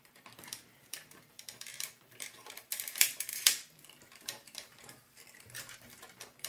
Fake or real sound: fake